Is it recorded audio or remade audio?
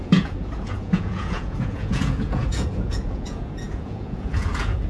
remade